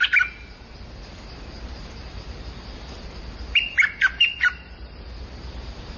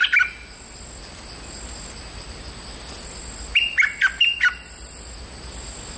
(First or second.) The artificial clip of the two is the first